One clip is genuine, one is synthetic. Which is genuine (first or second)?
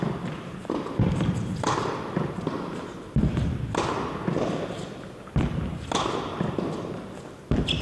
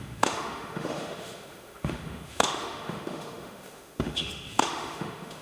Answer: first